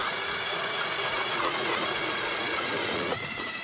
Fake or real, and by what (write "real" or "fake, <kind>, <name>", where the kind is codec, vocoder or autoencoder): fake, vocoder, Vocos